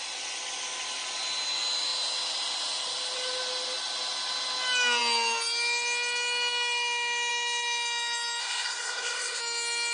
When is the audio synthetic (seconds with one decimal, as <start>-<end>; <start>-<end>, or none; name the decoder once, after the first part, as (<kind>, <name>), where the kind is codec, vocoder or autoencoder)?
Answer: 8.4-9.4 (codec, SNAC)